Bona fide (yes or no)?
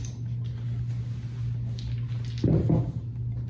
yes